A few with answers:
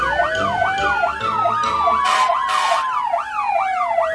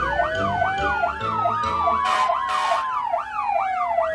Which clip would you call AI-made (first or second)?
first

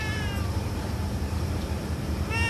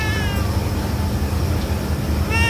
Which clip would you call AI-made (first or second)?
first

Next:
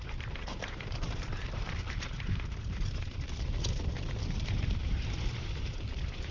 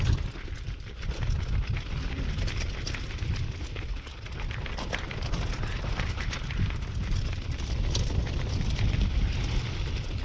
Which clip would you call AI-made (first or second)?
first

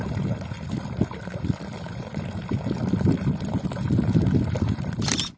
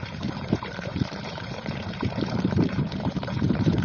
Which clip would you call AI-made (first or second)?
second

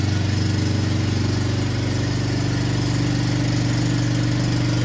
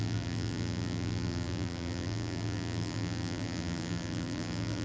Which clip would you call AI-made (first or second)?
second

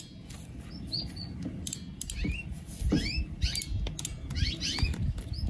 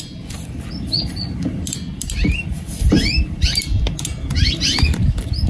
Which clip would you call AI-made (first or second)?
second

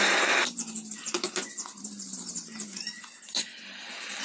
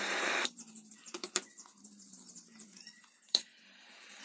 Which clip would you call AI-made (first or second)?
second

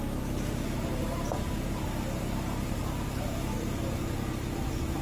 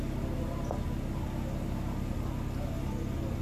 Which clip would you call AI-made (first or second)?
first